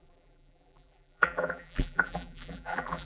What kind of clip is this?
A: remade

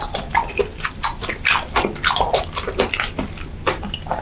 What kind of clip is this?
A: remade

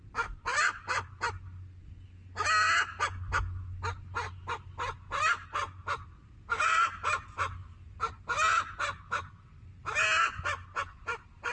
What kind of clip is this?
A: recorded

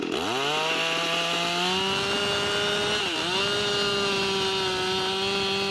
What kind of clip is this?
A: recorded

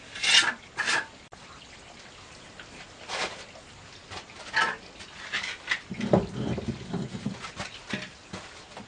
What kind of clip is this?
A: recorded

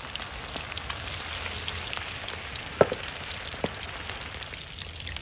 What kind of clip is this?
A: recorded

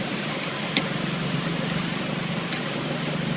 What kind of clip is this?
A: recorded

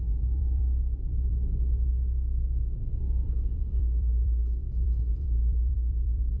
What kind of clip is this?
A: remade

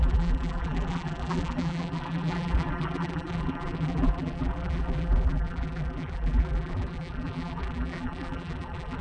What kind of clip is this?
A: remade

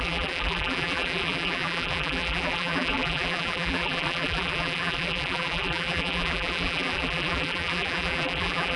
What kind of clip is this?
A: remade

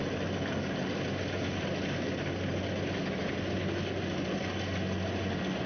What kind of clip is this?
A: recorded